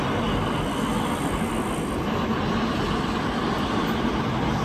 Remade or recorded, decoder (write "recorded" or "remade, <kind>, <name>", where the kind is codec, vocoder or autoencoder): recorded